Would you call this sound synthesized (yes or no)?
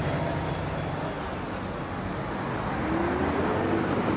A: no